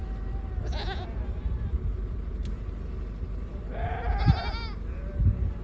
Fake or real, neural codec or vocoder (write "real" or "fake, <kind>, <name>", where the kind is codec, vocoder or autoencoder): real